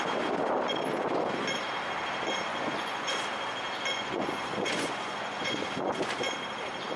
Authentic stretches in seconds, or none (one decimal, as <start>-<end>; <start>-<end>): 0.0-2.5; 3.2-3.9; 5.9-7.0